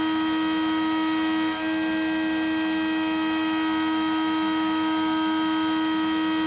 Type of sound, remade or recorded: recorded